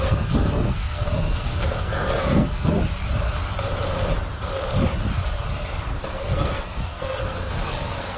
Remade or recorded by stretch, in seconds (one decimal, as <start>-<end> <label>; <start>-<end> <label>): 0.0-2.8 remade; 2.8-5.8 recorded; 5.8-8.2 remade